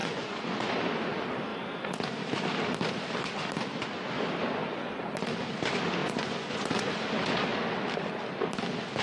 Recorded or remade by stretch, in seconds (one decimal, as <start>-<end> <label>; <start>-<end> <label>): 0.0-0.7 remade; 0.7-6.0 recorded; 6.0-6.8 remade; 6.8-9.0 recorded